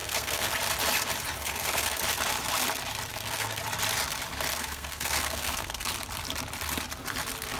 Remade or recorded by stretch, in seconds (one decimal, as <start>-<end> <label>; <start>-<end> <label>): 0.0-0.5 remade; 0.5-1.4 recorded; 1.4-2.0 remade; 2.0-3.1 recorded; 3.1-3.6 remade; 3.6-4.5 recorded; 4.5-5.9 remade; 5.9-7.6 recorded

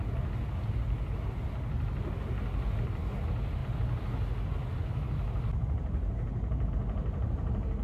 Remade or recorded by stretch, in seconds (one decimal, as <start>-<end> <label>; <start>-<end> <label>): 0.0-7.8 recorded

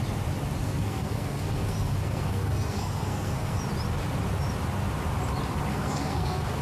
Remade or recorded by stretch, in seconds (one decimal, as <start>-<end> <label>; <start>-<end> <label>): 0.0-0.6 recorded; 0.6-3.6 remade; 3.6-5.7 recorded; 5.7-6.6 remade

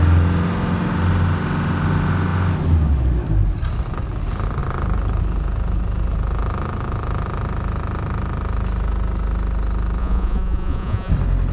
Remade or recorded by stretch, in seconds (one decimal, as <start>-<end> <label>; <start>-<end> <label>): 0.0-10.0 recorded; 10.0-11.1 remade; 11.1-11.5 recorded

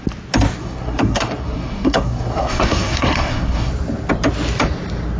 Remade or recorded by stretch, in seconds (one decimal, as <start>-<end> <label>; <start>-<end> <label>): 0.0-0.6 recorded; 0.6-3.7 remade; 3.7-5.2 recorded